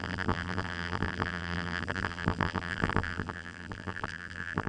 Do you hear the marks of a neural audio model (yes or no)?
yes